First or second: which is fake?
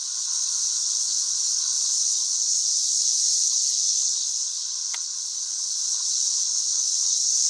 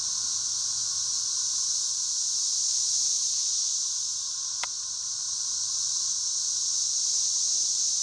first